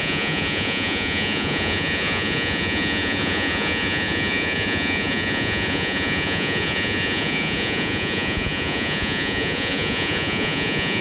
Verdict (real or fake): fake